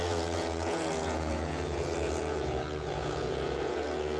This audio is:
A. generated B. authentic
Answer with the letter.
A